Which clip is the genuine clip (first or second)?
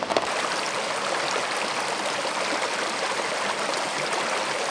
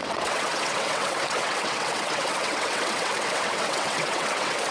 first